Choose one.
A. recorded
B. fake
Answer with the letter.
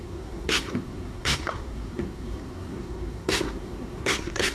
B